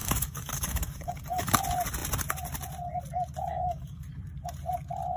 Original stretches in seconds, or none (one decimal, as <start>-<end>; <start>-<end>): 1.6-3.5; 4.0-5.2